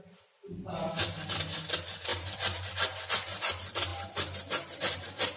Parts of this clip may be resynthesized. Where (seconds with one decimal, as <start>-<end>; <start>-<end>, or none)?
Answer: none